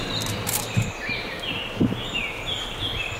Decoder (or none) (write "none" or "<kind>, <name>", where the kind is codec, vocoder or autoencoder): none